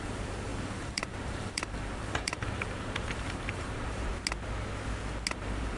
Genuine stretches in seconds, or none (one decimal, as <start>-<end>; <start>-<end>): 4.1-5.3

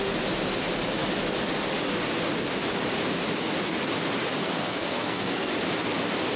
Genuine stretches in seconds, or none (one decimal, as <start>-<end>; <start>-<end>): 0.0-4.4; 5.5-6.4

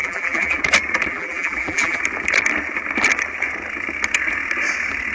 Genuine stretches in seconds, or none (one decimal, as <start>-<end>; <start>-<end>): 0.6-1.1; 2.0-5.1

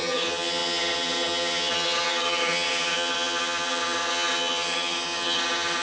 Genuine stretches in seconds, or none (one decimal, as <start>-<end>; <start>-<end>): none

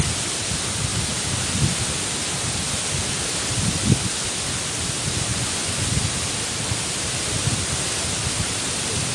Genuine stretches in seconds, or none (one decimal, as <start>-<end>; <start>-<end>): 0.0-5.3; 5.9-9.1

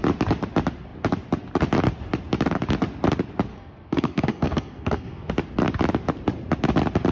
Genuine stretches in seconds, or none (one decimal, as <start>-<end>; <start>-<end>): 0.0-3.5; 5.3-7.1

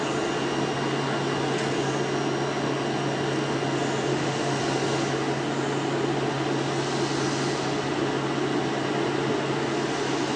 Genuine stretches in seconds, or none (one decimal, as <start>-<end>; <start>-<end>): 0.0-4.1; 4.6-10.4